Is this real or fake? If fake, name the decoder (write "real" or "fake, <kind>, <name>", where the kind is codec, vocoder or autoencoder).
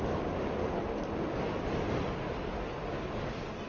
real